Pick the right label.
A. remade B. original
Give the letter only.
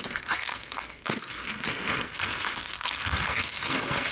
A